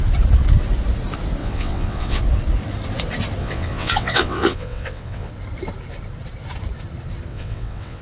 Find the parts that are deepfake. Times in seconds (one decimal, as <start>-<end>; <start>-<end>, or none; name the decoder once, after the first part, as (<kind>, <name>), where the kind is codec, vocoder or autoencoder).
1.4-2.2 (vocoder, WaveNeXt); 3.4-5.3; 7.3-8.0